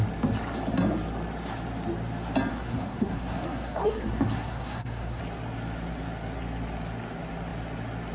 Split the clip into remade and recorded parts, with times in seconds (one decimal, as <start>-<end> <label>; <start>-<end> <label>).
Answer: 0.0-2.5 recorded; 2.5-5.2 remade; 5.2-8.1 recorded